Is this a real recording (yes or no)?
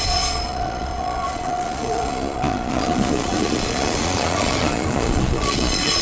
no